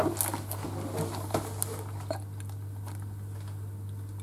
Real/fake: real